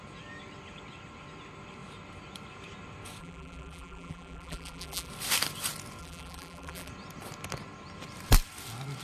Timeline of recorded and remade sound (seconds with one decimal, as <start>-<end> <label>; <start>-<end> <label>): 0.0-3.2 recorded; 3.2-5.1 remade; 5.1-6.0 recorded; 6.0-6.9 remade; 6.9-9.0 recorded

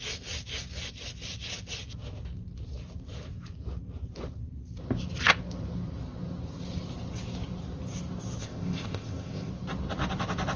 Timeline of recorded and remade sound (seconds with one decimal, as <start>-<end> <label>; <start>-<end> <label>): 0.0-8.4 recorded; 8.4-9.5 remade; 9.5-10.6 recorded

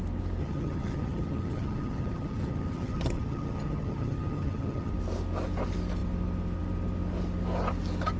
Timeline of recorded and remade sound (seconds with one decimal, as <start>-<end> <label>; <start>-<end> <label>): 0.0-0.4 recorded; 0.4-4.9 remade; 4.9-8.2 recorded

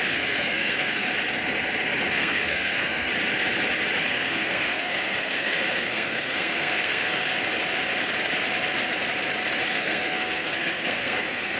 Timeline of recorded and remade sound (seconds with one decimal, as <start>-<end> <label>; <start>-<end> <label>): 0.0-1.1 remade; 1.1-2.1 recorded; 2.1-3.1 remade; 3.1-4.0 recorded; 4.0-7.3 remade; 7.3-9.6 recorded; 9.6-11.6 remade

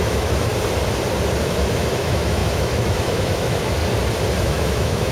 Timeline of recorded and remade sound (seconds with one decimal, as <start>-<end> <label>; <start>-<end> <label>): 0.0-0.5 remade; 0.5-1.4 recorded; 1.4-3.8 remade; 3.8-4.4 recorded; 4.4-5.1 remade

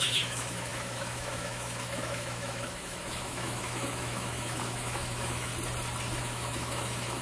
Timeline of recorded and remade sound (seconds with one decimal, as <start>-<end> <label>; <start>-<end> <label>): 0.0-5.5 remade; 5.5-6.2 recorded; 6.2-7.2 remade